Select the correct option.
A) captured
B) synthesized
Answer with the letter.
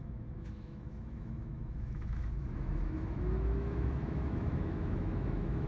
B